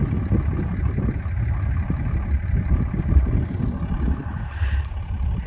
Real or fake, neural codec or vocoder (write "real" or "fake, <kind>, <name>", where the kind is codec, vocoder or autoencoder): real